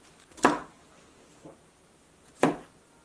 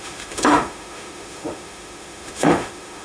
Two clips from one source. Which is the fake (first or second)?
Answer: second